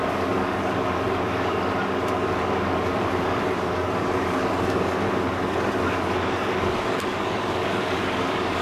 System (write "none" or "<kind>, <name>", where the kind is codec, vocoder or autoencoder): codec, DAC